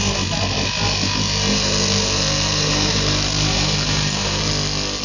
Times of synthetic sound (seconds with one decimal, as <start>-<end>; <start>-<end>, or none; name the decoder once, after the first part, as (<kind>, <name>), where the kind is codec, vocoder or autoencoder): 1.5-4.5 (vocoder, BigVGAN v2)